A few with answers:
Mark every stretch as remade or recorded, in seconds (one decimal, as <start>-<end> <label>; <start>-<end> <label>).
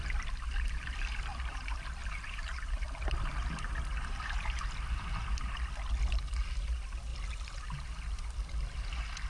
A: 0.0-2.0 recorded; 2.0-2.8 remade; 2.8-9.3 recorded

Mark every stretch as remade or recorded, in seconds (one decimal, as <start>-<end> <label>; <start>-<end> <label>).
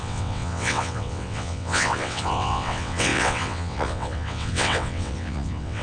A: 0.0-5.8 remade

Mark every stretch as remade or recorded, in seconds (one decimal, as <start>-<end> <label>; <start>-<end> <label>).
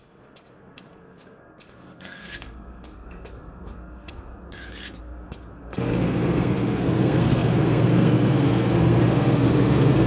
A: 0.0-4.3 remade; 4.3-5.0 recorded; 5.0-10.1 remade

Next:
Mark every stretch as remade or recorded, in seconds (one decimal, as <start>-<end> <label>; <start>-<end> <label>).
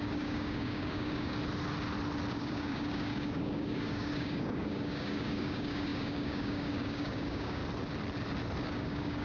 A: 0.0-1.4 remade; 1.4-2.3 recorded; 2.3-7.6 remade; 7.6-8.6 recorded; 8.6-9.2 remade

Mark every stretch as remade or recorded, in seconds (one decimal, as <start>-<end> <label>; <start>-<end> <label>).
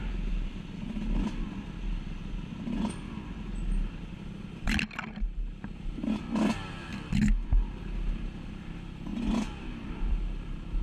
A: 0.0-10.8 recorded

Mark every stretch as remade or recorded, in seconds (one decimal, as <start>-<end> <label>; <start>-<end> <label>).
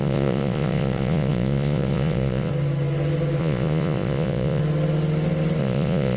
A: 0.0-2.5 remade; 2.5-3.4 recorded; 3.4-4.6 remade; 4.6-5.6 recorded; 5.6-6.2 remade